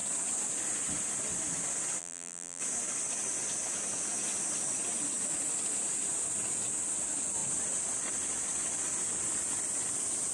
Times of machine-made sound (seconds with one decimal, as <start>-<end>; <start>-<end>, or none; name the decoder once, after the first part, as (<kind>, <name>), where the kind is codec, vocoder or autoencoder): 2.0-2.6 (vocoder, BigVGAN v2)